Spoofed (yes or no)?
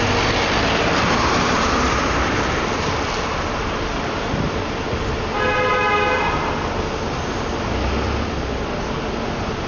no